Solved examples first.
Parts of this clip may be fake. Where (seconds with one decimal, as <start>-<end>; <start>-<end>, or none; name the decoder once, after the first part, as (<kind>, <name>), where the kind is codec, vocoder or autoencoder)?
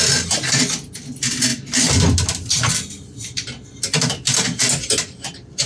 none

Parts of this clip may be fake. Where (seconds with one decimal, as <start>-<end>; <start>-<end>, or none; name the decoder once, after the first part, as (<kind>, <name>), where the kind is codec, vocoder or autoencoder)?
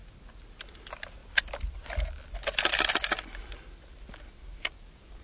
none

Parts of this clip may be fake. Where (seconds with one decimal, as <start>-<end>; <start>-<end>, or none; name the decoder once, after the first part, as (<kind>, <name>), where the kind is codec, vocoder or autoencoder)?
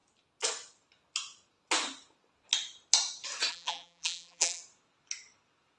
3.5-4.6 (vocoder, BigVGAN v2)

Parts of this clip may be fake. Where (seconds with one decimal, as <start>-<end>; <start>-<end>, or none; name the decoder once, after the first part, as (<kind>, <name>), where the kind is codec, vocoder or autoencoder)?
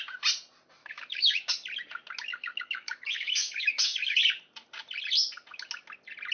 0.8-1.5 (autoencoder, DAC-VAE); 2.3-4.2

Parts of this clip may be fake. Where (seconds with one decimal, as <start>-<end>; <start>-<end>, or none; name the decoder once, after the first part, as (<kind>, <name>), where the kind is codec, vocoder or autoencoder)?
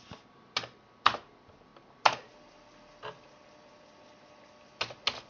none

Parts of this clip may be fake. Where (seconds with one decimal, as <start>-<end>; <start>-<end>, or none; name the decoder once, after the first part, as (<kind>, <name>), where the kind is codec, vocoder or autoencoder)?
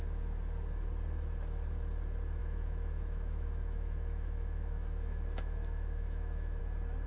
2.4-6.6 (autoencoder, DAC-VAE)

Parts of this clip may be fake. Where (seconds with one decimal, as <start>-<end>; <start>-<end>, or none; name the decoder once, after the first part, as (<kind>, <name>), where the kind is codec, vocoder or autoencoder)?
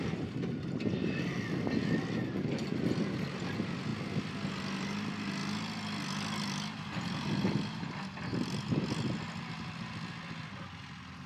none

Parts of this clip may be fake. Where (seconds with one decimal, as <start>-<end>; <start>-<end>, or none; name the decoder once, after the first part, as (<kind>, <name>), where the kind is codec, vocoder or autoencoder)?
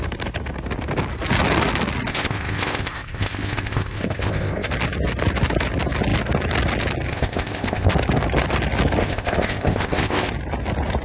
2.1-4.7 (codec, ZipCodec); 7.1-7.9; 9.0-10.3